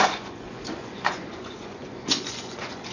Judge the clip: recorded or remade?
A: remade